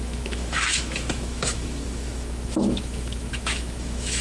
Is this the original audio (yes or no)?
no